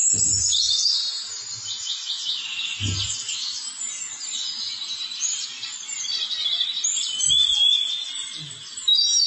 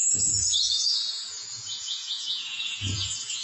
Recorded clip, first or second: first